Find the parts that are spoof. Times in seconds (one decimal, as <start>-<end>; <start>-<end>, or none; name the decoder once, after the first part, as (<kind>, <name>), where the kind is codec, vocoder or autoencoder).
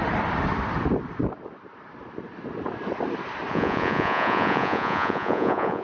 3.5-5.8 (vocoder, Vocos)